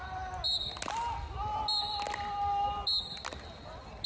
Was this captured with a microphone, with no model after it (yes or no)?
yes